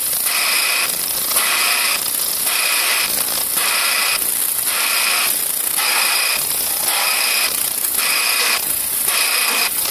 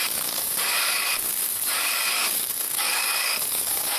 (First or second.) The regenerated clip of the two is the second